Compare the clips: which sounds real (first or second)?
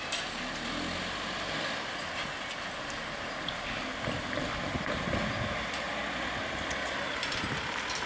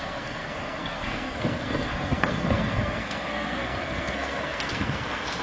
first